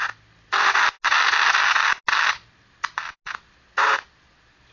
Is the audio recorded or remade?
recorded